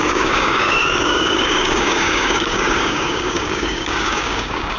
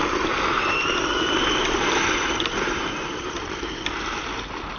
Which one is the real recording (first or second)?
second